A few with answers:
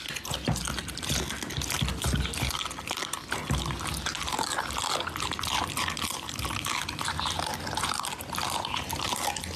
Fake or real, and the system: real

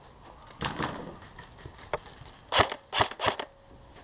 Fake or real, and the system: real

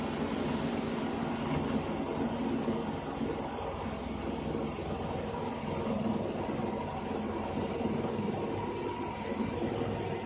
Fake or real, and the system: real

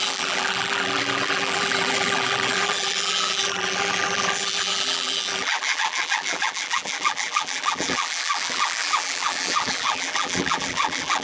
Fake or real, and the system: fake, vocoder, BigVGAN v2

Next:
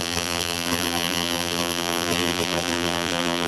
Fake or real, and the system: fake, vocoder, BigVGAN v2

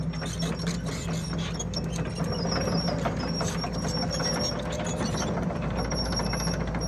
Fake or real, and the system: real